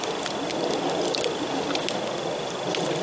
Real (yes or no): yes